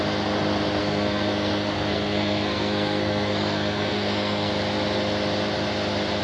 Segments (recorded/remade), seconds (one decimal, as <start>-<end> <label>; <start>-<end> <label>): 0.0-0.8 recorded; 0.8-4.5 remade; 4.5-6.2 recorded